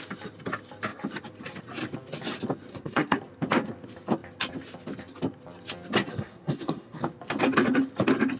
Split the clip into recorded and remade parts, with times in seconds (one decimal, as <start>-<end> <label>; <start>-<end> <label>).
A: 0.0-2.7 recorded; 2.7-3.2 remade; 3.2-6.1 recorded; 6.1-7.0 remade; 7.0-8.4 recorded